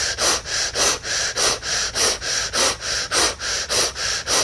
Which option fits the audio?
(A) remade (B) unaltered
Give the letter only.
B